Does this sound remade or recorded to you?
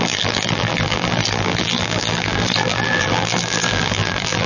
remade